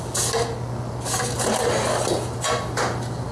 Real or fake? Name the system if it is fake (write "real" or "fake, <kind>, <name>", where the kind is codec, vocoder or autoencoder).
real